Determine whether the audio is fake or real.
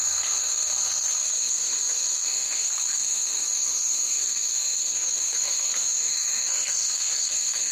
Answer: fake